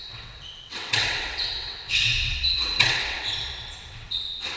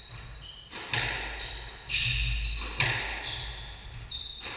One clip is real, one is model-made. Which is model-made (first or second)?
first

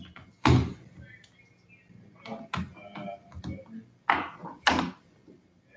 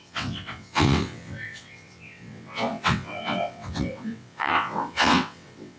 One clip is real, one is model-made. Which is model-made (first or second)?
second